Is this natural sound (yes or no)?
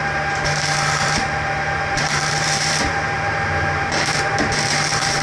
no